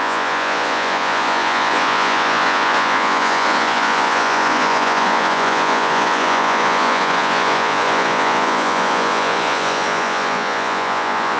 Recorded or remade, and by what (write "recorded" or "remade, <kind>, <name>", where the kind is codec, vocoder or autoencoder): remade, vocoder, Vocos